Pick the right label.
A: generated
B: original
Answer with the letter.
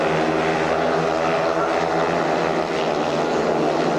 B